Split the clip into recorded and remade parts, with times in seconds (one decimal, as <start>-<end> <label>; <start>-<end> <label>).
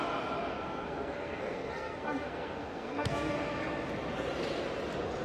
0.0-0.5 recorded; 0.5-3.6 remade; 3.6-5.2 recorded